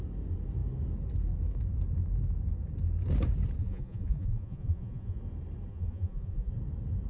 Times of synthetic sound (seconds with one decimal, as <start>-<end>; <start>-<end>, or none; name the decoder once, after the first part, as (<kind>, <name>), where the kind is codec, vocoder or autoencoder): 3.6-5.2 (vocoder, Vocos); 5.7-6.5